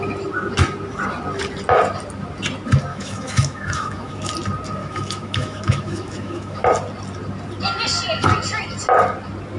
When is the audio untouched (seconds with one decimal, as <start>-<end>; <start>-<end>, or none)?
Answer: 0.0-2.9; 4.3-4.8; 6.6-9.6